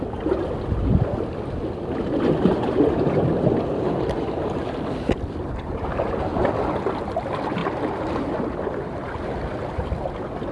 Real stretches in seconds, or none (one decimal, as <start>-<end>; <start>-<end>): 0.0-7.6; 9.2-10.5